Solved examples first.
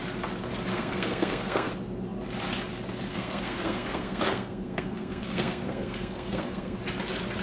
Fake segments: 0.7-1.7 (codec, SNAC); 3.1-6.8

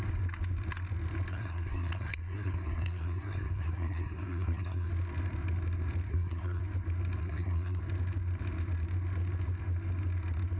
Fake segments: 1.3-4.9 (codec, SNAC); 6.1-6.6; 7.2-7.8

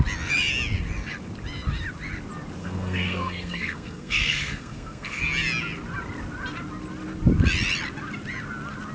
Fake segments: 2.6-5.2 (codec, SNAC)